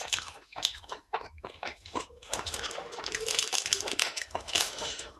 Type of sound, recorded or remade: remade